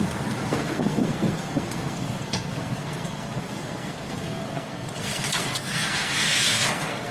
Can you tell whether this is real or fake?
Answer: fake